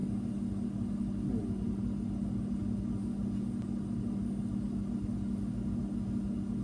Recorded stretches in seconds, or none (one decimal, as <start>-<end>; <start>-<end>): 0.0-6.6